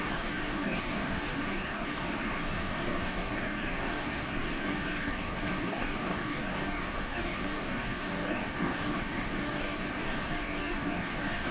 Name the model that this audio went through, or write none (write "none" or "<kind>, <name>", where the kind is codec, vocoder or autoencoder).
codec, DAC